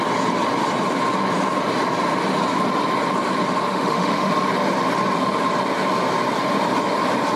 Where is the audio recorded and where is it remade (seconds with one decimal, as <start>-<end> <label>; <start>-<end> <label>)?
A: 0.0-3.7 recorded; 3.7-4.3 remade; 4.3-7.4 recorded